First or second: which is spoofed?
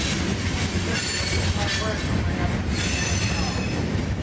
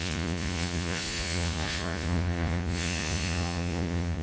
second